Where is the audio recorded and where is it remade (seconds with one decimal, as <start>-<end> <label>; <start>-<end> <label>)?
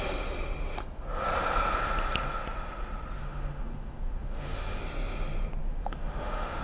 0.0-3.2 recorded; 3.2-4.8 remade; 4.8-5.6 recorded; 5.6-6.6 remade